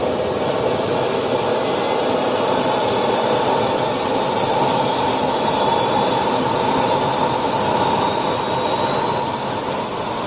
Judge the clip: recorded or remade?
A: recorded